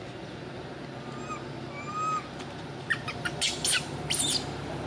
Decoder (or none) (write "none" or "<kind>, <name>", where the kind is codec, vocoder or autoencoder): none